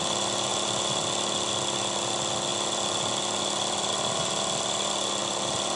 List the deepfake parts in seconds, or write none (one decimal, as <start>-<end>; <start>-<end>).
none